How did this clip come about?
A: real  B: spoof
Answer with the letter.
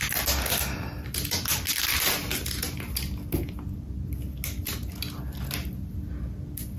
A